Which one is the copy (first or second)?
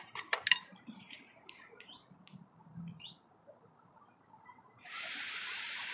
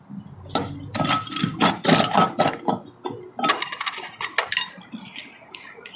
first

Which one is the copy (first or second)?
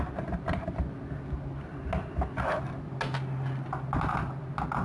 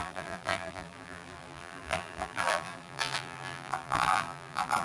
second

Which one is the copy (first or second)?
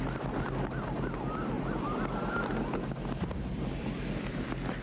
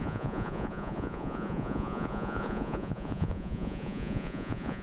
second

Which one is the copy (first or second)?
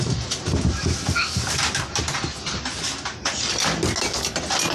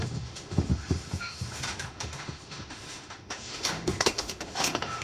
second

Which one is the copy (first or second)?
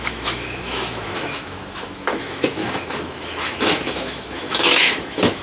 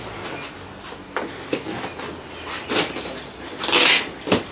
first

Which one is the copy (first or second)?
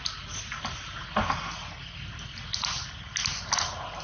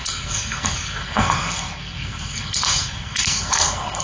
second